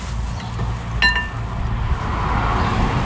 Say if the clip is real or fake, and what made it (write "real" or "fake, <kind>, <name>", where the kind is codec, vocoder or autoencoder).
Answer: real